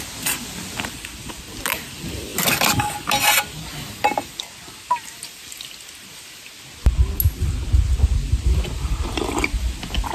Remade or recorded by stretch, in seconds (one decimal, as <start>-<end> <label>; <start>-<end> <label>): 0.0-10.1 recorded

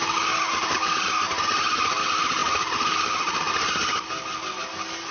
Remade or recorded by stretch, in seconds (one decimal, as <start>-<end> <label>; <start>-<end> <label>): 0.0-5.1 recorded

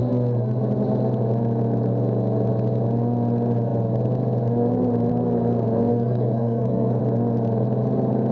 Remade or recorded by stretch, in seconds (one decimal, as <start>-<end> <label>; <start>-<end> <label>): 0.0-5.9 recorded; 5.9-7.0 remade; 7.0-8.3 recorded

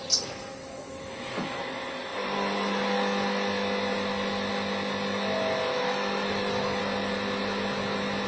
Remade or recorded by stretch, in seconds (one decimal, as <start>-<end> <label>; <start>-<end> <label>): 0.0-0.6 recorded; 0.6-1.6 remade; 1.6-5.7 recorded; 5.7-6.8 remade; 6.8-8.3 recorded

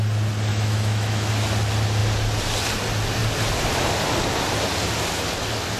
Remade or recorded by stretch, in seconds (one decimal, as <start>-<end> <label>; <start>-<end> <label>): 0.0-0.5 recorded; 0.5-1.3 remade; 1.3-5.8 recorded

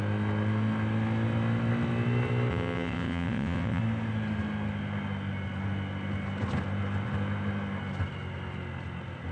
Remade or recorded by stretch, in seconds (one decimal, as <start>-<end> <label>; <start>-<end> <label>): 0.0-2.5 recorded; 2.5-3.8 remade; 3.8-9.3 recorded